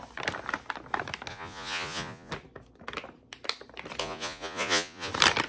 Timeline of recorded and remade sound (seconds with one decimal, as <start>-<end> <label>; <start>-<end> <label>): 0.0-1.3 recorded; 1.3-2.3 remade; 2.3-4.0 recorded; 4.0-5.1 remade; 5.1-5.5 recorded